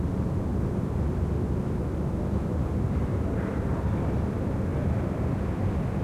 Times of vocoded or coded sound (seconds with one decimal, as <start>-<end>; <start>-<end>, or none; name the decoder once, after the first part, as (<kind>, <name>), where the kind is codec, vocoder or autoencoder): 0.5-1.2 (vocoder, BigVGAN v2); 3.1-4.1; 4.7-6.0